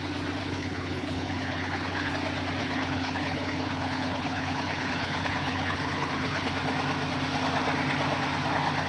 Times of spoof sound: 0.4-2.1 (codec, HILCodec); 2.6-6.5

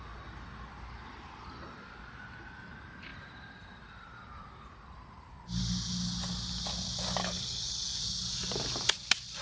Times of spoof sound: 7.2-8.0 (codec, HILCodec)

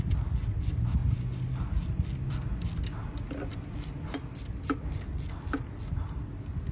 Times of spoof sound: none

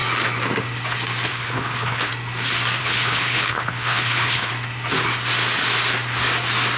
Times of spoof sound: 1.3-2.1 (codec, HILCodec); 2.8-4.5